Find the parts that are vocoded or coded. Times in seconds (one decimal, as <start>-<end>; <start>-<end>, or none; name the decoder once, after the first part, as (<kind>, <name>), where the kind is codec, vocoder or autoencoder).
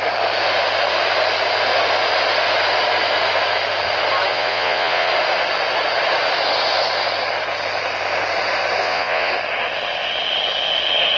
4.3-5.1 (vocoder, Vocos); 8.8-9.3